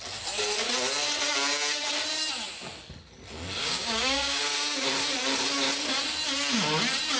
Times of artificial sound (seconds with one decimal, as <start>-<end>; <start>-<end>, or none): 3.6-4.4